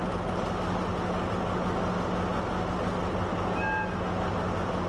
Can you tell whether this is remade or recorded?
recorded